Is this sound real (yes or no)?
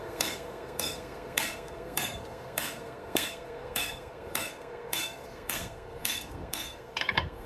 no